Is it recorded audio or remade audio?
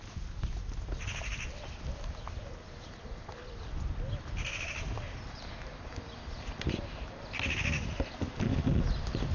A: recorded